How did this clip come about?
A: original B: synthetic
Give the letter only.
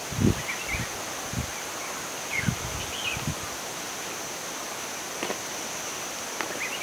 A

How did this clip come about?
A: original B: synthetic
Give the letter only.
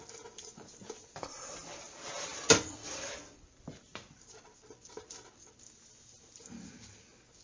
A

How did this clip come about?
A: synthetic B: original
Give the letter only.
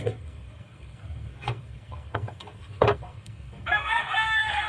A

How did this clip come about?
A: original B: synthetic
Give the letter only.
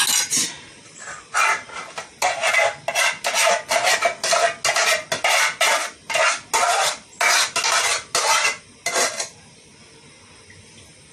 A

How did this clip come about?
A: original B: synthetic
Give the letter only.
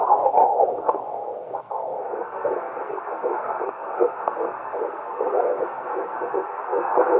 B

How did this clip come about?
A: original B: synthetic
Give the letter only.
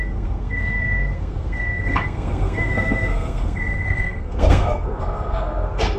B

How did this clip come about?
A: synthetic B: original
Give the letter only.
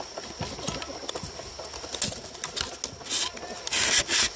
B